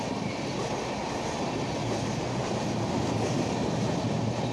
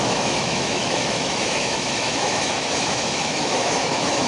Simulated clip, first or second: second